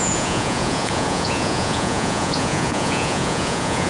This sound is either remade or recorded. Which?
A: remade